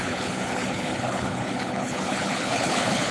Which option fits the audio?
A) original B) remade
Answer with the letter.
B